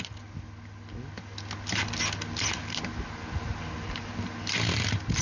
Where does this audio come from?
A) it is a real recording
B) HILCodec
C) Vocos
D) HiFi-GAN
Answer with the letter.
A